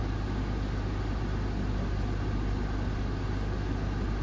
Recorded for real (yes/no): yes